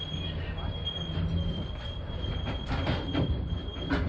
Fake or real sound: real